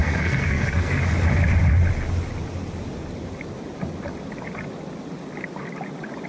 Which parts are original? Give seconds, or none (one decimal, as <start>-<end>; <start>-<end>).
1.0-6.3